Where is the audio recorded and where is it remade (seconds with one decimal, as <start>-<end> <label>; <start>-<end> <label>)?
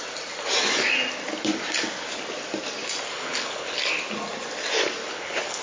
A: 0.0-3.1 recorded; 3.1-3.8 remade; 3.8-5.0 recorded; 5.0-5.6 remade